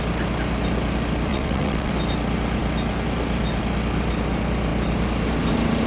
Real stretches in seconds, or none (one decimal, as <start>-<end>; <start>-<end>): 0.0-1.3; 1.9-5.9